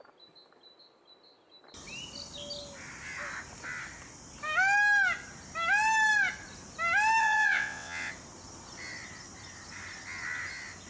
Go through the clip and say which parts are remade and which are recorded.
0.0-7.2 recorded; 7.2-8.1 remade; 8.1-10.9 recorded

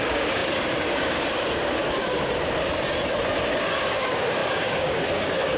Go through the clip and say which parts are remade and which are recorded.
0.0-2.1 remade; 2.1-3.6 recorded; 3.6-5.6 remade